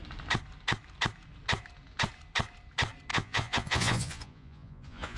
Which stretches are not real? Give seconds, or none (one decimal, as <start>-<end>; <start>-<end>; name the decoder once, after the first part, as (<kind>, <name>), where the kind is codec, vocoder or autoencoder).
3.1-5.2 (vocoder, Vocos)